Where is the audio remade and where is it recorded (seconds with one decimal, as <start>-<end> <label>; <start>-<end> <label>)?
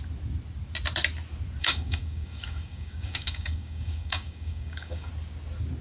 0.0-1.6 recorded; 1.6-5.1 remade; 5.1-5.8 recorded